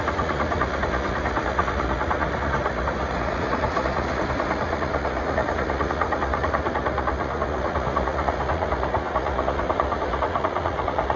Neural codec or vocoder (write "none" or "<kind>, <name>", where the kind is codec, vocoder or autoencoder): vocoder, Vocos